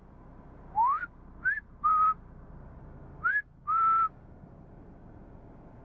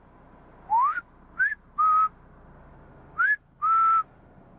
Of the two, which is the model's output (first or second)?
first